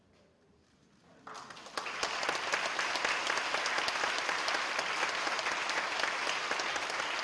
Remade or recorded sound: recorded